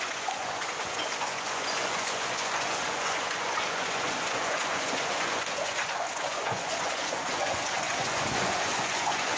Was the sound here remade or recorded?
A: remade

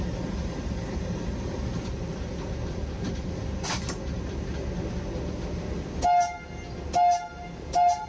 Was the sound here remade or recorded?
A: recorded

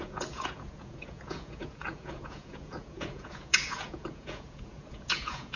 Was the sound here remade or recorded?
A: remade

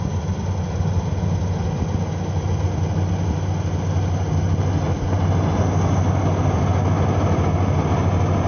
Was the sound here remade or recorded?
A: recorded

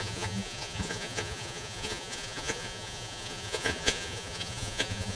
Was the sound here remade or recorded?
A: remade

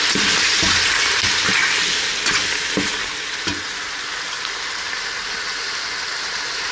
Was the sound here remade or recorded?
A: recorded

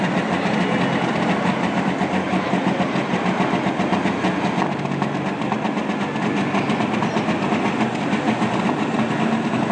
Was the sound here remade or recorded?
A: recorded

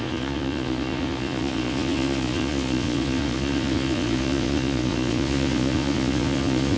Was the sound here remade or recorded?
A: remade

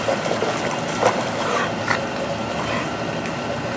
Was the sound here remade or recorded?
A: recorded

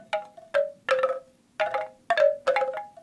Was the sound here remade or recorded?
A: recorded